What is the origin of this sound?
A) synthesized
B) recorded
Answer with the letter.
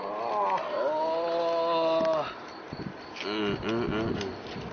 B